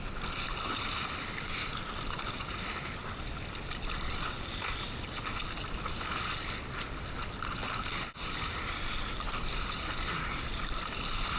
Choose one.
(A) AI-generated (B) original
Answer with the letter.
B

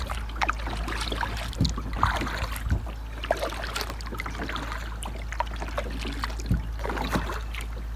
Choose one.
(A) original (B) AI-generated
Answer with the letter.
A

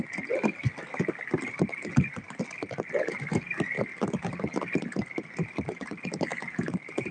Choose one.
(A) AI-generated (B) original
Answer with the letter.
B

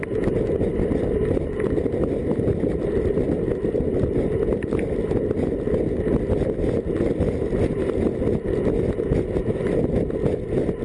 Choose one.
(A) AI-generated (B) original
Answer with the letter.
B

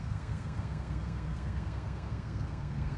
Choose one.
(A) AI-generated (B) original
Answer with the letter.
A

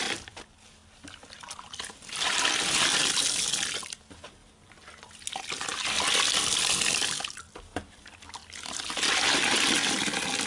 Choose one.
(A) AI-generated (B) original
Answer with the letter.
B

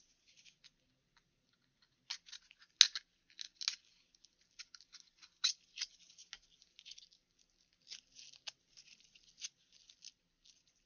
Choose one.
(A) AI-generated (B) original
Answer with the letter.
B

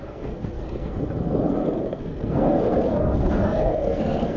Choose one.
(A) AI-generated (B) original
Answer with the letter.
A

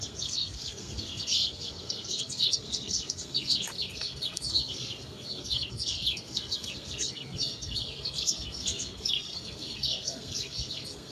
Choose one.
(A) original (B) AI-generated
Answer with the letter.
B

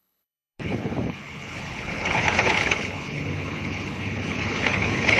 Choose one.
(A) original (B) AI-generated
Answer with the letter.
B